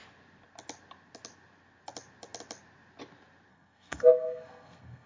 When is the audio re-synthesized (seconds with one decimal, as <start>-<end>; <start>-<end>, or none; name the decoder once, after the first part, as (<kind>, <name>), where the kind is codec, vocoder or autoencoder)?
3.5-5.1 (codec, SNAC)